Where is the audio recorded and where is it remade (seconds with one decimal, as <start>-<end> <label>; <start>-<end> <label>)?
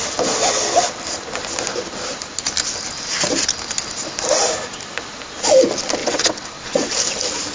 0.0-6.0 recorded; 6.0-6.9 remade; 6.9-7.5 recorded